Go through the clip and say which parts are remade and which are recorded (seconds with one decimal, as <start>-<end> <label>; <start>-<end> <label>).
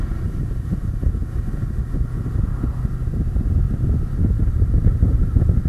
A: 0.0-1.2 remade; 1.2-4.6 recorded; 4.6-5.7 remade